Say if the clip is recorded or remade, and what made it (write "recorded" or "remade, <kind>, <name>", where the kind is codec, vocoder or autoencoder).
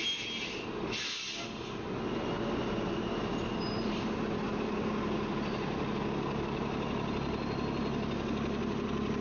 recorded